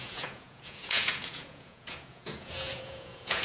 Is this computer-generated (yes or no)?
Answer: yes